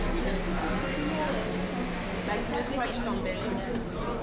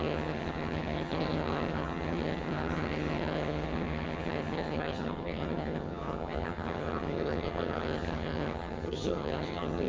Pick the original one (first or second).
first